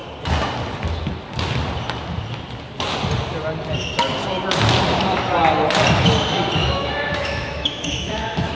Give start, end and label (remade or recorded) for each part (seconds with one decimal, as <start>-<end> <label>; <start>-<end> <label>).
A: 0.0-6.6 recorded; 6.6-8.5 remade